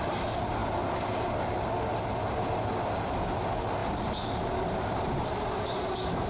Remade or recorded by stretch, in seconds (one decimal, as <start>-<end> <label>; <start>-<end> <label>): 0.0-6.3 recorded